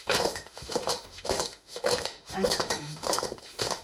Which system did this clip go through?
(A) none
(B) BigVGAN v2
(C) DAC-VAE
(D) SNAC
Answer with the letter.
C